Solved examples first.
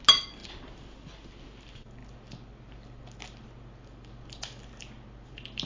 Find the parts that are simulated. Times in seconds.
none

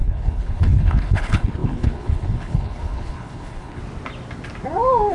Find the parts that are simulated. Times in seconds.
0.0-3.8 (codec, HILCodec)

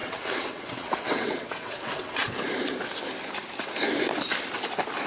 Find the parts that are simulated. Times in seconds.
0.0-2.2 (vocoder, WaveNeXt)

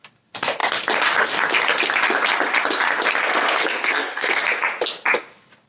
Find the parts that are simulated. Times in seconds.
3.2-4.4 (codec, SNAC)